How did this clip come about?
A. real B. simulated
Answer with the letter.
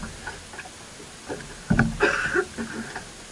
A